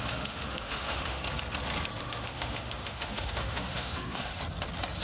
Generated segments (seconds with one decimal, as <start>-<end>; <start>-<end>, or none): 0.0-1.2; 2.0-4.3